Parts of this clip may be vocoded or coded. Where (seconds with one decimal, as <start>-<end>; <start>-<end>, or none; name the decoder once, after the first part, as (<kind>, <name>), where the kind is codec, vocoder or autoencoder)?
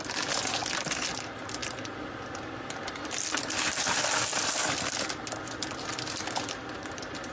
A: none